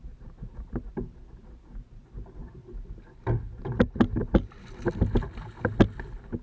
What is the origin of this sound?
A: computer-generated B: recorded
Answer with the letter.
B